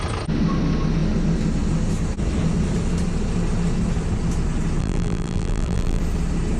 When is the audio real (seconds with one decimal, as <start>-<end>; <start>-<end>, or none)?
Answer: 0.0-4.8; 6.0-6.6